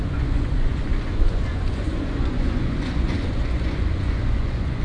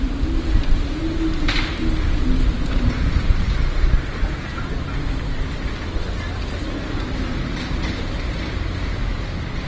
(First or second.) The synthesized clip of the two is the first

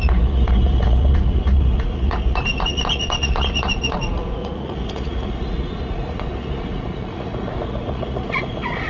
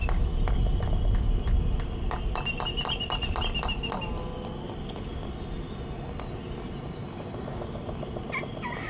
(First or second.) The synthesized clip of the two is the first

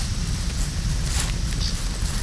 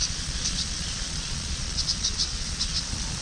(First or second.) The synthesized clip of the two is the second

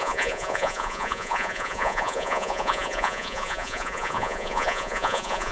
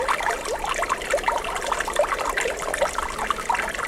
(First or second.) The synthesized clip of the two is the first